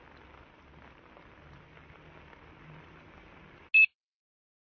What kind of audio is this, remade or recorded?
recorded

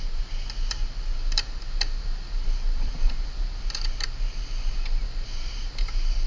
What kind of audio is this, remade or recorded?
recorded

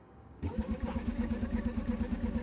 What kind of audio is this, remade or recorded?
remade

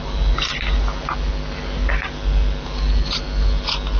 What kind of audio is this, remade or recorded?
recorded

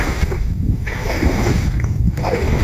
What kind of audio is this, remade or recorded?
remade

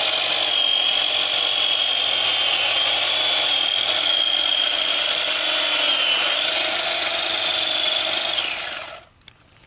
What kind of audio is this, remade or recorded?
recorded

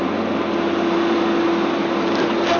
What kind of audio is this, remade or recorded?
recorded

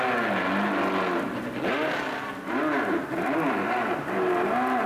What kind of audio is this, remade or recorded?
recorded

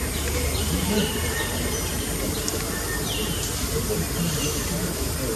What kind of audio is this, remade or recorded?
recorded